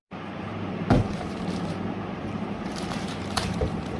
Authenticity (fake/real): fake